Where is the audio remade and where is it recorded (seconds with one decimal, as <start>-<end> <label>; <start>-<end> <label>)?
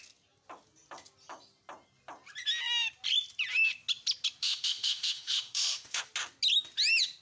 0.0-4.4 recorded; 4.4-6.0 remade; 6.0-7.2 recorded